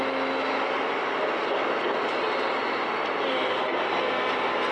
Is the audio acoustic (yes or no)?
yes